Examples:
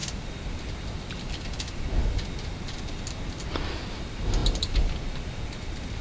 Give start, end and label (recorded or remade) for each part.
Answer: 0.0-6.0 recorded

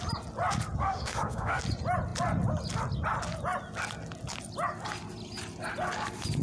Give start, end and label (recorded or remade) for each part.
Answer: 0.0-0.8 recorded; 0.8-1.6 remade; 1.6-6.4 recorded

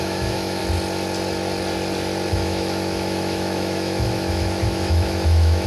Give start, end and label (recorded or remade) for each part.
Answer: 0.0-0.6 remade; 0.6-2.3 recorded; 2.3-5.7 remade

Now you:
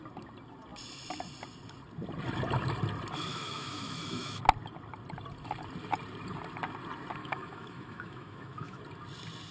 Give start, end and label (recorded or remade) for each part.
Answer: 0.0-3.3 recorded; 3.3-4.4 remade; 4.4-7.2 recorded; 7.2-8.8 remade; 8.8-9.5 recorded

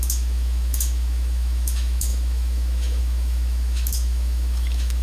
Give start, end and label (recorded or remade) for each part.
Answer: 0.0-5.0 remade

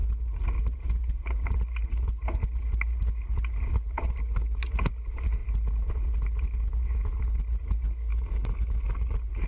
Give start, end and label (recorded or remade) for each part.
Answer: 0.0-8.1 recorded; 8.1-8.8 remade; 8.8-9.5 recorded

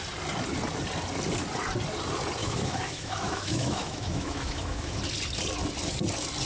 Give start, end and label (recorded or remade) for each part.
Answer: 0.0-2.4 recorded; 2.4-5.0 remade; 5.0-6.4 recorded